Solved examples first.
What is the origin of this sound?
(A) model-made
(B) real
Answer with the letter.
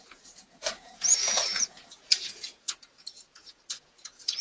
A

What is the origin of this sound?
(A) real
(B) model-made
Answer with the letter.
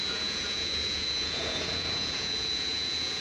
B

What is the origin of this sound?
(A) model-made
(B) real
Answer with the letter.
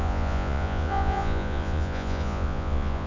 A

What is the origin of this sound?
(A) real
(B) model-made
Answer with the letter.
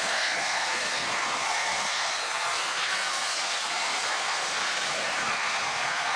B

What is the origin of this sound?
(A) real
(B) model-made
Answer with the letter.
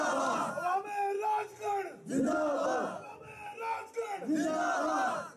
A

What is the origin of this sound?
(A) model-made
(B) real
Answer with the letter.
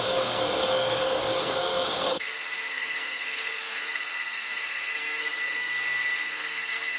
A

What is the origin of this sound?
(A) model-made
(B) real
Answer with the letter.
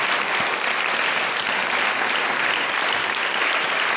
B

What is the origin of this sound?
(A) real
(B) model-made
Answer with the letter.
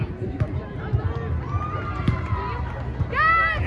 A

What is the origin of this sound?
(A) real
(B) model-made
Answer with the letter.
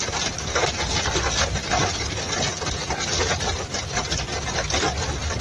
A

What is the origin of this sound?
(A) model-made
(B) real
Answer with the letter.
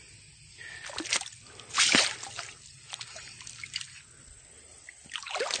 B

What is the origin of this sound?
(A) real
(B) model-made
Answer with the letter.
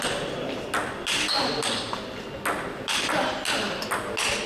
A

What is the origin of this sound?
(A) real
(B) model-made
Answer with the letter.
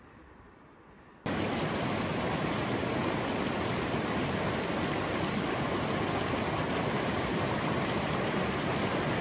A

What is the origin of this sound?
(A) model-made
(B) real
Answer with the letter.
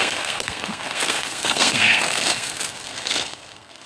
A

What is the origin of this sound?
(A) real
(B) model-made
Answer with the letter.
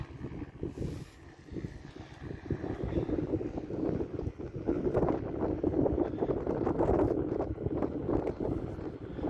A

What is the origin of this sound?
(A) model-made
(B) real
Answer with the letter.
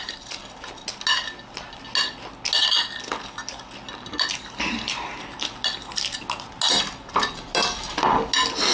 B